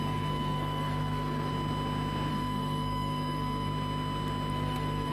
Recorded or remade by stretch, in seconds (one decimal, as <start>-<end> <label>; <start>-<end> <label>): 0.0-1.5 remade; 1.5-2.3 recorded; 2.3-3.7 remade; 3.7-4.5 recorded; 4.5-5.1 remade

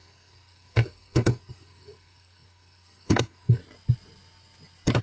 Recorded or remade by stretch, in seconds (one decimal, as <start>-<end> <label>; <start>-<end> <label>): 0.0-3.6 remade; 3.6-5.0 recorded

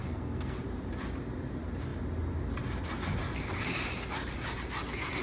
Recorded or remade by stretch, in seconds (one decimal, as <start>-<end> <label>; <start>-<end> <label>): 0.0-0.6 remade; 0.6-5.2 recorded

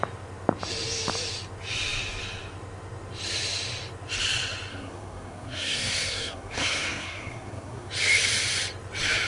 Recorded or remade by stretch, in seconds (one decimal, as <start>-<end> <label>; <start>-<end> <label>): 0.0-4.7 recorded; 4.7-7.9 remade; 7.9-9.3 recorded